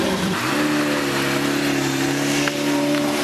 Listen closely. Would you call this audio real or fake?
fake